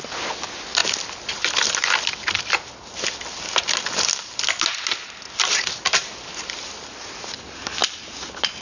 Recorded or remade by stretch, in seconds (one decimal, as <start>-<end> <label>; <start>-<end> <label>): 0.0-8.6 recorded